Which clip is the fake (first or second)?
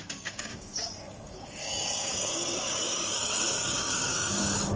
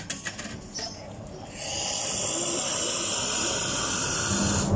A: first